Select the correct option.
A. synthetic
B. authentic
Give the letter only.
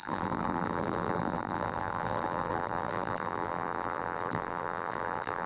A